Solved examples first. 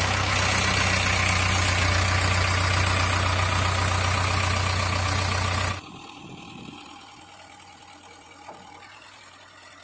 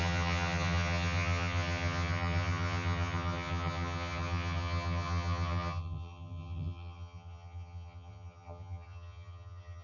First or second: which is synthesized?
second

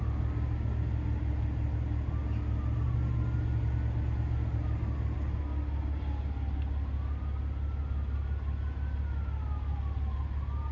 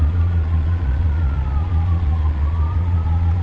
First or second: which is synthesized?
second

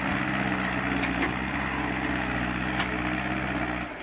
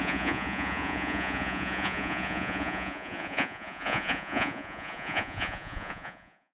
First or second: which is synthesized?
second